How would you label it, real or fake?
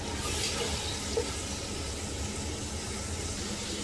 real